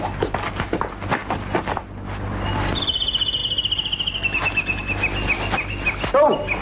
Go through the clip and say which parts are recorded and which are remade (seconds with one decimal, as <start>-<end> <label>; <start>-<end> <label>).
0.0-6.6 recorded

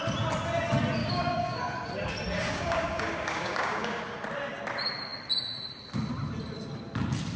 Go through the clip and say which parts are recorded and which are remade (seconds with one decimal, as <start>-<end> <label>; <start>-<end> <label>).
0.0-1.0 recorded; 1.0-1.6 remade; 1.6-2.4 recorded; 2.4-4.0 remade; 4.0-7.4 recorded

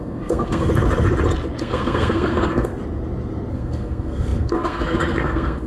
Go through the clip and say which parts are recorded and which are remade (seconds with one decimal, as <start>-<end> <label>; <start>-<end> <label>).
0.0-0.7 remade; 0.7-1.6 recorded; 1.6-2.7 remade; 2.7-3.5 recorded; 3.5-5.7 remade

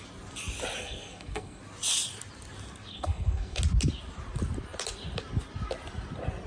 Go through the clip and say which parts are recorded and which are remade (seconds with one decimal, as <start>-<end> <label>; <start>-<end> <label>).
0.0-0.8 recorded; 0.8-1.6 remade; 1.6-2.9 recorded; 2.9-3.6 remade; 3.6-6.5 recorded

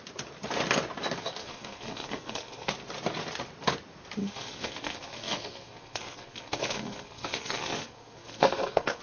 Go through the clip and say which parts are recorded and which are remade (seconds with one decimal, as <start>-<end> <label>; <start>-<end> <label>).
0.0-1.4 recorded; 1.4-2.7 remade; 2.7-4.2 recorded; 4.2-9.0 remade

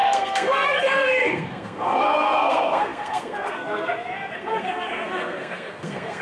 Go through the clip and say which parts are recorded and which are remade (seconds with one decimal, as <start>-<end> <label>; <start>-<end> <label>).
0.0-6.2 remade

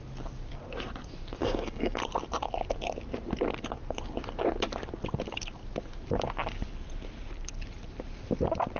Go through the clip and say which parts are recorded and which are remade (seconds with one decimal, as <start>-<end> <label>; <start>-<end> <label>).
0.0-1.4 recorded; 1.4-2.0 remade; 2.0-8.8 recorded

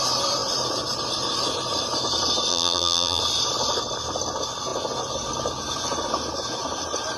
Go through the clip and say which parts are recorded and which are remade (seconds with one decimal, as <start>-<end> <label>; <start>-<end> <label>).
0.0-2.5 recorded; 2.5-3.2 remade; 3.2-7.2 recorded